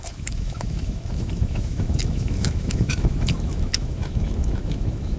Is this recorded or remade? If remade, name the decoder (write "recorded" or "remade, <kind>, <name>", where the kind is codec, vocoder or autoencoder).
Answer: remade, autoencoder, DAC-VAE